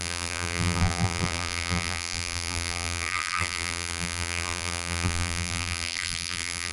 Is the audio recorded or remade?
remade